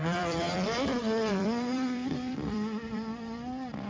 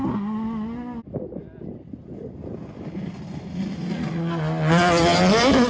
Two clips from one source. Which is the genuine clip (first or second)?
second